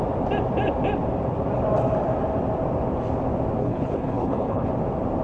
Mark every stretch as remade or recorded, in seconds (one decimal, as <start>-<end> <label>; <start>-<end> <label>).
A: 0.0-3.6 recorded; 3.6-4.7 remade; 4.7-5.2 recorded

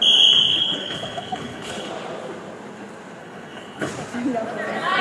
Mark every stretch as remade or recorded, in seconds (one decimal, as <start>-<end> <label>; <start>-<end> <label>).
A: 0.0-0.5 recorded; 0.5-1.9 remade; 1.9-3.2 recorded; 3.2-3.9 remade; 3.9-5.0 recorded

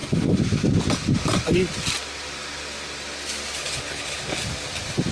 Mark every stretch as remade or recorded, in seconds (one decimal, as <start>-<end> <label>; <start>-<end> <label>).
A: 0.0-3.6 recorded; 3.6-4.2 remade; 4.2-5.1 recorded

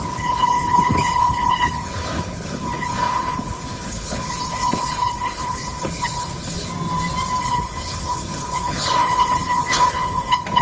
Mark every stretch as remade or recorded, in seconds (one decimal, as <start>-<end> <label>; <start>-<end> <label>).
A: 0.0-6.7 remade; 6.7-7.4 recorded; 7.4-10.6 remade

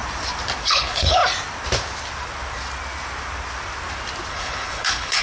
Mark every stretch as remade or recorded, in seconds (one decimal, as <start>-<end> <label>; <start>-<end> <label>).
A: 0.0-0.6 recorded; 0.6-1.2 remade; 1.2-4.3 recorded; 4.3-5.2 remade